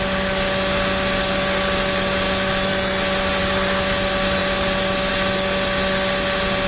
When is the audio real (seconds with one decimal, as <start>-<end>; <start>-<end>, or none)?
0.0-6.7